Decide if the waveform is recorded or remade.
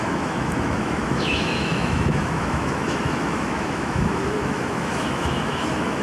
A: remade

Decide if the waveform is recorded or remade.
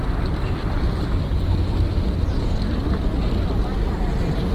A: recorded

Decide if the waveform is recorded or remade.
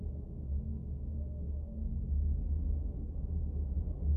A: recorded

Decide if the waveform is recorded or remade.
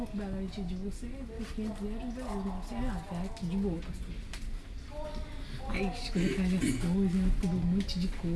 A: recorded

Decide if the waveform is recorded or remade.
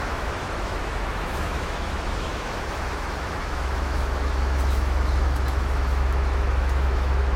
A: remade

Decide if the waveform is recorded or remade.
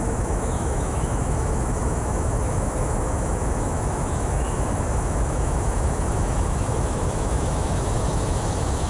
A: remade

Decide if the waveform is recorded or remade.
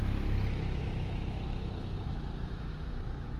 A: remade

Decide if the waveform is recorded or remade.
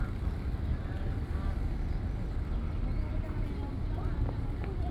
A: recorded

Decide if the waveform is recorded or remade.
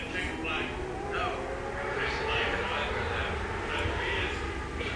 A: recorded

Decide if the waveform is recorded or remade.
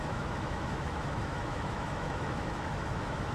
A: remade